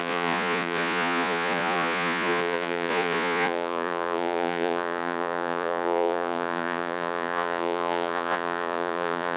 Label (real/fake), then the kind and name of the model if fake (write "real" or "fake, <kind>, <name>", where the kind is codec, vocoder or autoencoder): fake, vocoder, Vocos